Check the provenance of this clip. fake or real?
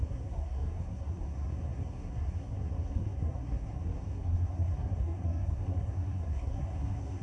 fake